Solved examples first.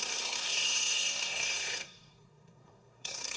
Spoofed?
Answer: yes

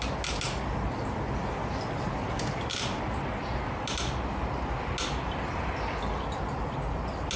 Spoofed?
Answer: no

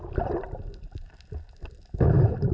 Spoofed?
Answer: no